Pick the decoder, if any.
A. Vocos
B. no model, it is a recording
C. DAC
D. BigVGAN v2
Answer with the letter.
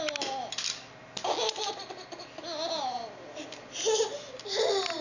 B